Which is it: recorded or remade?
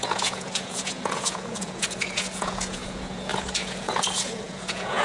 remade